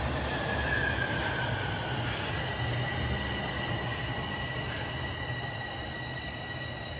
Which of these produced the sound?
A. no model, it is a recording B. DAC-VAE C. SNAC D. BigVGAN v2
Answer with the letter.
A